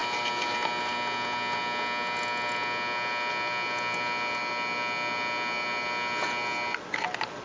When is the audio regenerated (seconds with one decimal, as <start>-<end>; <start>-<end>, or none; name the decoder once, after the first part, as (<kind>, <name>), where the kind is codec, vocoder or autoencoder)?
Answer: none